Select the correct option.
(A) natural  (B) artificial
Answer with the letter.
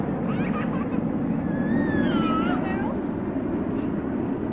A